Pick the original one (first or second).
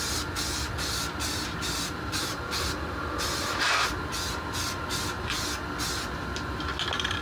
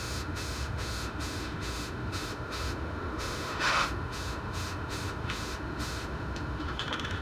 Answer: first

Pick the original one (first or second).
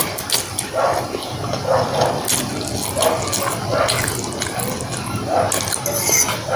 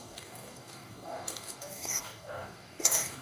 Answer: first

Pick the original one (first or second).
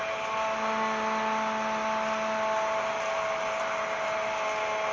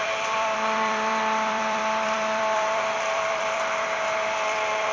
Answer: first